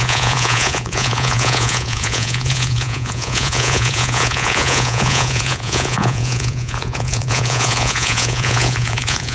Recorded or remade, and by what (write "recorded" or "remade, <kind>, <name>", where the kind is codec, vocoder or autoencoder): remade, vocoder, Vocos